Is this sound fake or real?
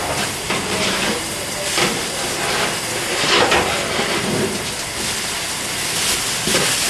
real